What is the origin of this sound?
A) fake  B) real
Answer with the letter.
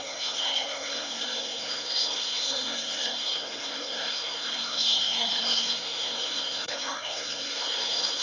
A